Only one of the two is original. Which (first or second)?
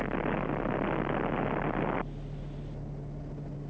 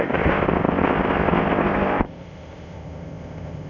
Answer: first